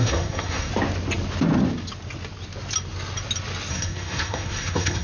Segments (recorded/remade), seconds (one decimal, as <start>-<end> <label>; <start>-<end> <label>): 0.0-0.7 remade; 0.7-3.7 recorded; 3.7-5.0 remade